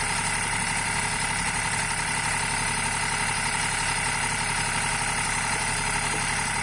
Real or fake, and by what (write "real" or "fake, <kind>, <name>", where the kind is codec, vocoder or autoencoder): real